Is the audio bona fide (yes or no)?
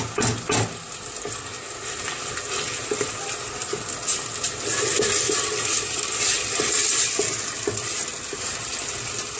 yes